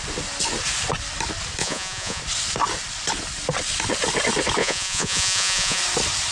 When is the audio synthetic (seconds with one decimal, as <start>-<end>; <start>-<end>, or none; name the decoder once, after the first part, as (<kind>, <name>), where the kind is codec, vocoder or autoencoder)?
1.6-2.2 (vocoder, Vocos); 4.6-5.8